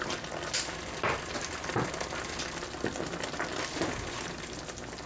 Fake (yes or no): no